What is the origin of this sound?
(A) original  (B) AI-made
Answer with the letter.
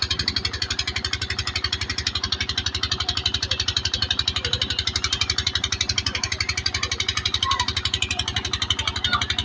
B